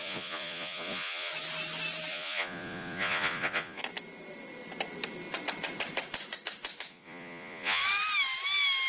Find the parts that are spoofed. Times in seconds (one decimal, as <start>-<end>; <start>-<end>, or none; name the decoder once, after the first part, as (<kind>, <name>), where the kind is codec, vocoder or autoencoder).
0.0-1.3 (vocoder, Vocos); 2.1-3.8; 6.9-7.8